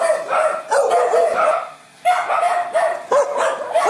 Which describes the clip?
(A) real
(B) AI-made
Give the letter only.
A